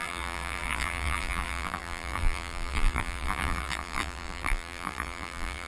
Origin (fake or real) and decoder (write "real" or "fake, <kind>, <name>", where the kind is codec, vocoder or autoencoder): fake, vocoder, BigVGAN v2